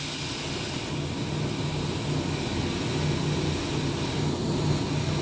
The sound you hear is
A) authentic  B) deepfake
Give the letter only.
A